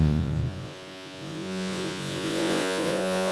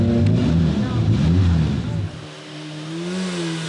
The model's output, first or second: first